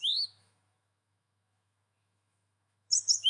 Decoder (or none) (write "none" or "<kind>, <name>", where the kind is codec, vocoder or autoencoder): autoencoder, DAC-VAE